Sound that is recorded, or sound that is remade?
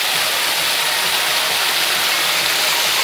recorded